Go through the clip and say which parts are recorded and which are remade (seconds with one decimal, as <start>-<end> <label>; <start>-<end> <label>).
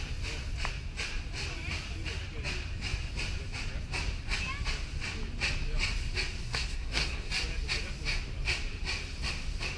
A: 0.0-6.4 recorded; 6.4-7.3 remade; 7.3-9.8 recorded